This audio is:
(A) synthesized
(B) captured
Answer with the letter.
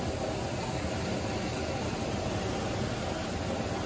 B